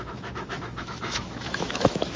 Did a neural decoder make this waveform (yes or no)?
yes